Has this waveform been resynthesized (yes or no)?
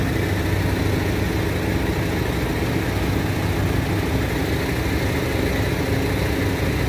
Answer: no